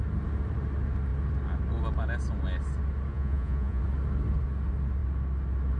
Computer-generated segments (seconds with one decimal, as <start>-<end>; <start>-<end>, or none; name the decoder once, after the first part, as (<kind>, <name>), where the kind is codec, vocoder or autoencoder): 3.1-3.8 (vocoder, Vocos)